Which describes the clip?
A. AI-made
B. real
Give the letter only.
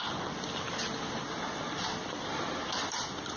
B